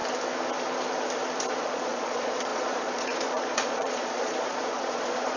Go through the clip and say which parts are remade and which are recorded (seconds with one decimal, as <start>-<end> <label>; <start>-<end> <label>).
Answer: 0.0-1.6 recorded; 1.6-5.4 remade